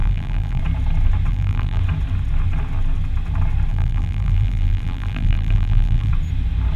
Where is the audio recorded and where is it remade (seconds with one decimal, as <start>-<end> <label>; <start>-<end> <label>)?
0.0-0.6 remade; 0.6-1.3 recorded; 1.3-1.8 remade; 1.8-3.7 recorded; 3.7-6.1 remade; 6.1-6.8 recorded